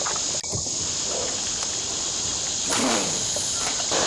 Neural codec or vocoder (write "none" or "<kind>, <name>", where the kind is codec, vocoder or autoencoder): none